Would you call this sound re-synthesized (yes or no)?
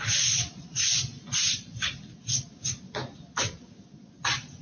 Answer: yes